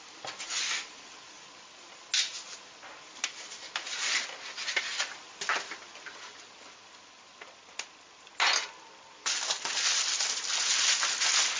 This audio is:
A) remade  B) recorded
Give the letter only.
B